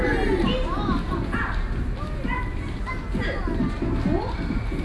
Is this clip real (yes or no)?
yes